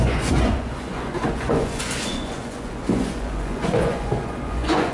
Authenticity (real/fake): fake